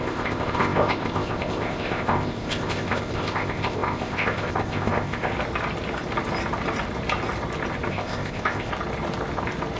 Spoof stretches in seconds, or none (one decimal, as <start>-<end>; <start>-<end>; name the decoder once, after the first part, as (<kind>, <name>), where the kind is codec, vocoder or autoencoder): 0.0-5.3 (codec, ZipCodec); 7.9-8.7